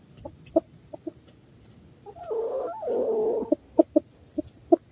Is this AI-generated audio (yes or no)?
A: no